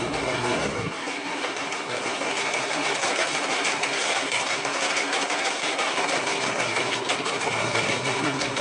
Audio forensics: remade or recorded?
remade